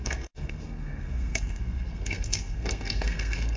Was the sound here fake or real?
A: fake